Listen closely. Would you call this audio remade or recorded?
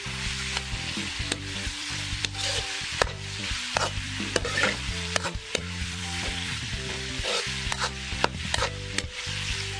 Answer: remade